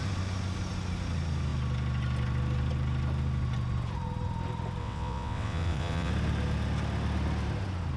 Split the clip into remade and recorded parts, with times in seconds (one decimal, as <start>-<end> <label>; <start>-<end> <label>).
0.0-4.8 recorded; 4.8-6.1 remade; 6.1-8.0 recorded